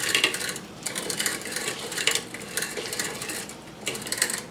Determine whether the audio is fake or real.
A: fake